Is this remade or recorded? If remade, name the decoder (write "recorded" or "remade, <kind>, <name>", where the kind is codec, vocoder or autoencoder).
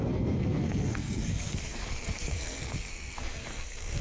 remade, codec, SNAC